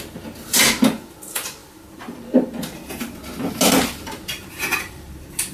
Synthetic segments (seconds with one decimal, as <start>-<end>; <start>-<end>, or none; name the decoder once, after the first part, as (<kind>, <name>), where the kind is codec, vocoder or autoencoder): none